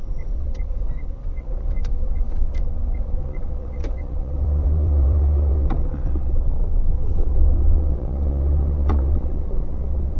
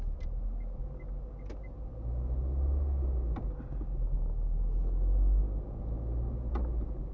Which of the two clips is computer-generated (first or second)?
first